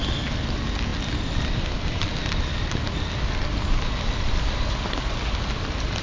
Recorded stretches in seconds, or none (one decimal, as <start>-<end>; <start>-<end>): 0.0-0.9; 4.5-6.0